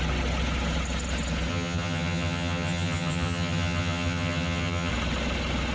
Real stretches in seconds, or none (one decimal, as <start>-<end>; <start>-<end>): 0.0-1.5; 4.9-5.7